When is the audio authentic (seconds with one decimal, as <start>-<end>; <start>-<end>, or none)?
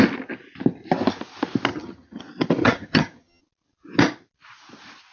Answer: 0.0-1.7; 2.2-2.6; 3.4-5.1